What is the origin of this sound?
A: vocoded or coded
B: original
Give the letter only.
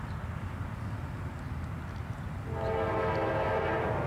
B